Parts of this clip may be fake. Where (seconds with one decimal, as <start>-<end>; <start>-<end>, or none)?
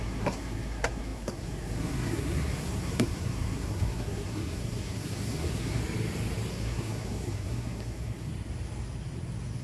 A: 0.0-5.8; 6.5-8.3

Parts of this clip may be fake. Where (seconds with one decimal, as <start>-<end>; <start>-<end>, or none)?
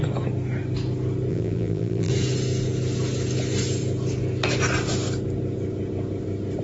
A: 1.3-2.1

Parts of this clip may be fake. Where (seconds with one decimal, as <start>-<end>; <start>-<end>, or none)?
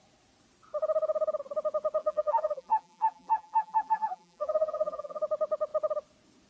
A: 2.0-5.2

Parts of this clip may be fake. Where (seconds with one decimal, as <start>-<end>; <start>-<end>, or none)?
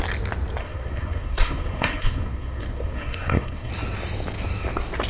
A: 0.6-3.7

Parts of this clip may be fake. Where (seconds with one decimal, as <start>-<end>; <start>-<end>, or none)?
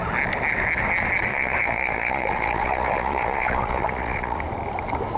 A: 1.3-4.4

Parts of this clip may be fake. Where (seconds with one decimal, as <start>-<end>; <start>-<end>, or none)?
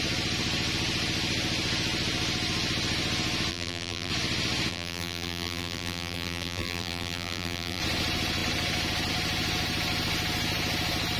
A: 3.5-4.1; 4.7-7.8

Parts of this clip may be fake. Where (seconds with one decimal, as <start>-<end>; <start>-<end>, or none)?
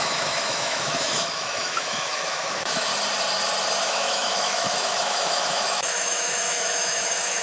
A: 0.0-2.9; 3.8-7.4